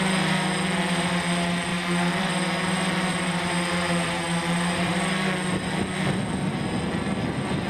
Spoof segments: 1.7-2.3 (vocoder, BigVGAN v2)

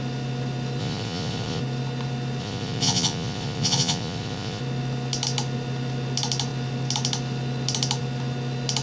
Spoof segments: 0.8-1.6 (vocoder, Vocos); 2.4-4.6

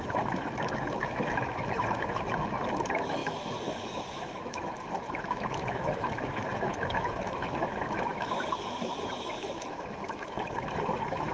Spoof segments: 0.0-11.3 (autoencoder, DAC-VAE)

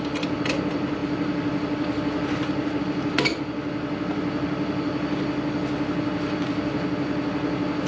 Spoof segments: none